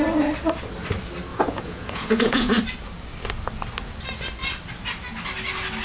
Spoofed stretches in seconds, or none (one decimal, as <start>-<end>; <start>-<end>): 1.3-2.6